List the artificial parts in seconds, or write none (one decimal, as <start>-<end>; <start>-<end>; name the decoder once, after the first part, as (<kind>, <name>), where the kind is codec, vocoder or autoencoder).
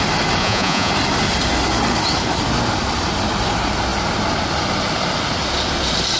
0.4-0.9 (vocoder, Vocos)